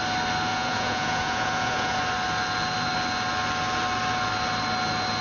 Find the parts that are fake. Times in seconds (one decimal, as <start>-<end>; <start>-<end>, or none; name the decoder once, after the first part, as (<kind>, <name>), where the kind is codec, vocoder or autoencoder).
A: 0.5-2.0 (vocoder, Vocos)